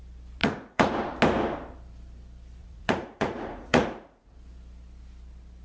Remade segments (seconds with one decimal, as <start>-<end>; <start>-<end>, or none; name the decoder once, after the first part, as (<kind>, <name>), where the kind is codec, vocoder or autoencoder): 0.4-0.9 (vocoder, Vocos); 2.6-4.3